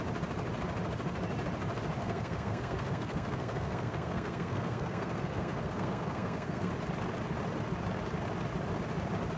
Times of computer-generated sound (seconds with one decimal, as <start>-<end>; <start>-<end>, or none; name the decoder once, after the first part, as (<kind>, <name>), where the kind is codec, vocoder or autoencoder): 2.0-6.7 (codec, SNAC)